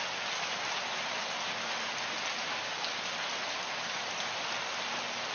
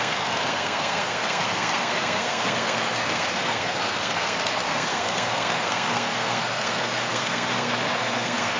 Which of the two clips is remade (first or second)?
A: second